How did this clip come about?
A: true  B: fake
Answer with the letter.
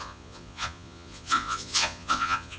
B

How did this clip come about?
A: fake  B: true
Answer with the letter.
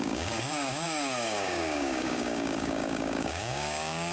A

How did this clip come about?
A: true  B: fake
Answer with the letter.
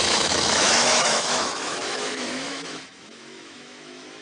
B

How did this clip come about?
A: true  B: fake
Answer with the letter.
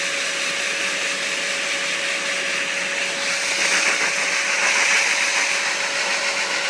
A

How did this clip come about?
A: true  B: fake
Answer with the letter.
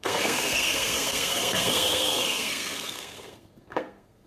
B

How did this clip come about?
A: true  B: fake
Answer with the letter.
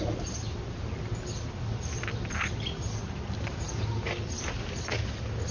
A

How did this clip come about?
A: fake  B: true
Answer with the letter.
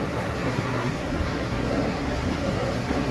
A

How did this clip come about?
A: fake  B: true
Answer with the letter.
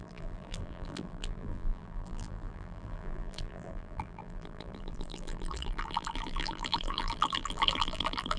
A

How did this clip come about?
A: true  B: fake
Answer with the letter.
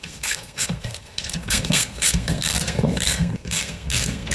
B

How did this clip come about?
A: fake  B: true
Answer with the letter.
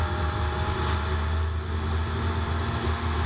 B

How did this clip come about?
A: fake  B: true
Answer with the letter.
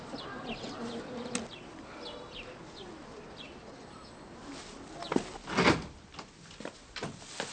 B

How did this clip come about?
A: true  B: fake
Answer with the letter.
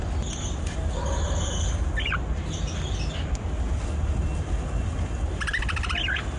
A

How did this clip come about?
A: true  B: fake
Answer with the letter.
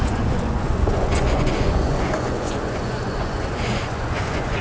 B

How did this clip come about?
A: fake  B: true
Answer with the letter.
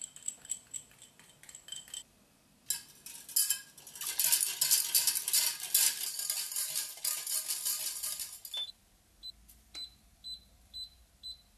B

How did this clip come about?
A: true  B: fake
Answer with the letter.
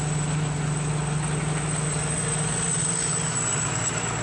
A